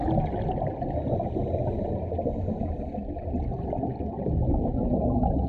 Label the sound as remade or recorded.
recorded